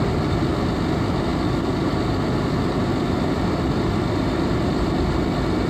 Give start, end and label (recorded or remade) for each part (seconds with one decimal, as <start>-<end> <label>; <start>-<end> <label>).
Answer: 0.0-5.7 recorded

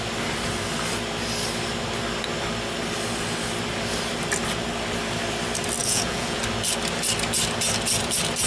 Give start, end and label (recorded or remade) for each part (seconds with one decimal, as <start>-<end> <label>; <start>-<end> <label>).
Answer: 0.0-5.8 recorded; 5.8-6.4 remade; 6.4-8.5 recorded

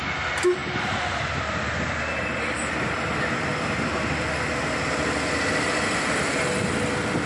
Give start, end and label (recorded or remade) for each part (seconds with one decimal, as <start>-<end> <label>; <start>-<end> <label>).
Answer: 0.0-7.3 recorded